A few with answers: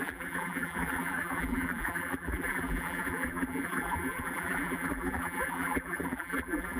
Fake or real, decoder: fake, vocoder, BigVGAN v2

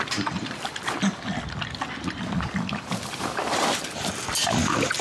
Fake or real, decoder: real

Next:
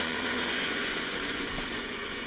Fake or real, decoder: fake, vocoder, Vocos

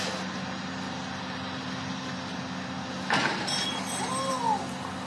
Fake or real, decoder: real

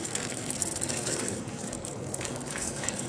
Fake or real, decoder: fake, codec, SNAC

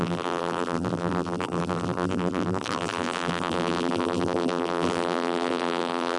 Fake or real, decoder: fake, vocoder, BigVGAN v2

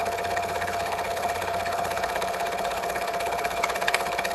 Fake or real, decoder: fake, codec, HILCodec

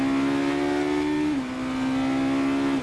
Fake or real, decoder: real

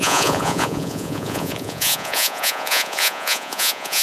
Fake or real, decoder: fake, vocoder, Vocos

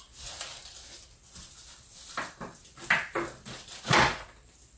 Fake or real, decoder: real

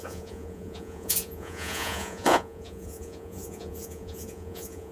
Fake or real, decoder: fake, vocoder, Vocos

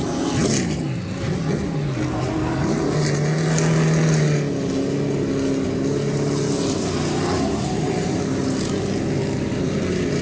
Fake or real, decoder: real